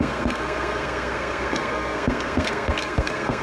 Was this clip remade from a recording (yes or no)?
yes